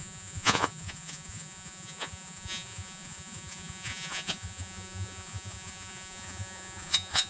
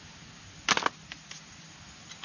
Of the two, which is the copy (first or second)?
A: first